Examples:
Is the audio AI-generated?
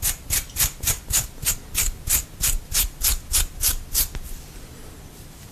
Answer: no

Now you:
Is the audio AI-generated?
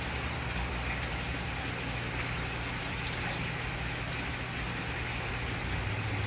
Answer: no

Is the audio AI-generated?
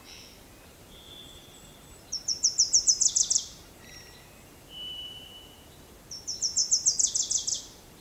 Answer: yes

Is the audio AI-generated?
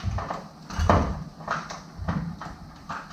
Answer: yes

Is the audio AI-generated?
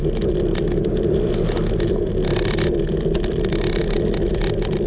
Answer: no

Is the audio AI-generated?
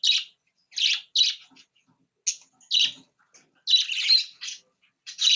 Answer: no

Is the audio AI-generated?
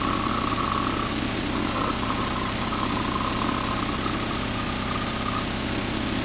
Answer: no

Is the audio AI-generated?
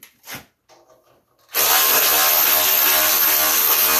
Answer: no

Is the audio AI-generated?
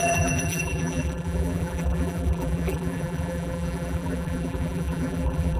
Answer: yes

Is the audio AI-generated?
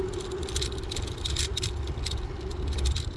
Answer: yes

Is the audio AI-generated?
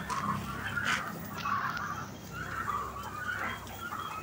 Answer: no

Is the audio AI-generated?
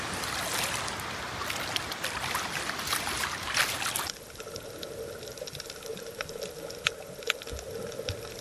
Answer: no